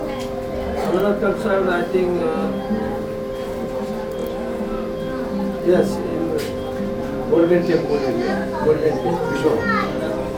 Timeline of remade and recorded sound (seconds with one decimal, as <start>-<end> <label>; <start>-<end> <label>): 0.0-7.4 recorded; 7.4-9.1 remade; 9.1-10.4 recorded